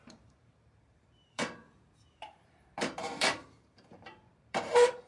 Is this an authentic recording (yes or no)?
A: no